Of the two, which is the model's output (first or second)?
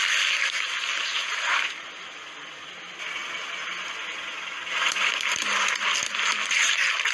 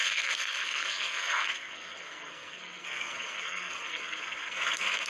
second